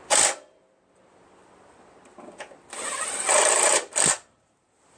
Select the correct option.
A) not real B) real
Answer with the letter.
B